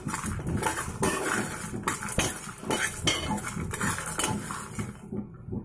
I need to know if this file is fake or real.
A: real